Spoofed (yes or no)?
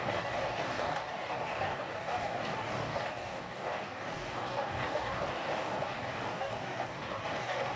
yes